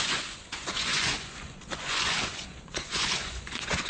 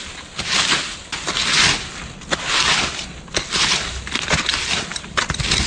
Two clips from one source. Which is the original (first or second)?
second